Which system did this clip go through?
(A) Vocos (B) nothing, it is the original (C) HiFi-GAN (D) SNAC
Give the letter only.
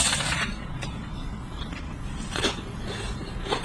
A